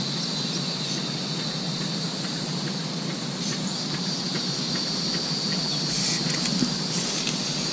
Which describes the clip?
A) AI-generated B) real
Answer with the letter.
B